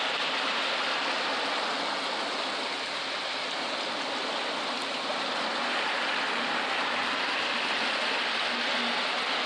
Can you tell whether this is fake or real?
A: real